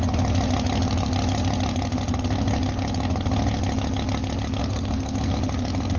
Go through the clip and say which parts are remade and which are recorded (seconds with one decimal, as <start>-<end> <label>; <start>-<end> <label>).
0.0-4.6 recorded; 4.6-5.3 remade; 5.3-6.0 recorded